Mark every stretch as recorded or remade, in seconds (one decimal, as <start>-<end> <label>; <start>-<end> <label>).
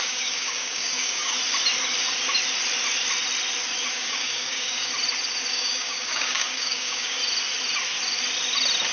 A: 0.0-1.4 remade; 1.4-3.9 recorded; 3.9-4.9 remade; 4.9-5.5 recorded; 5.5-7.2 remade; 7.2-8.9 recorded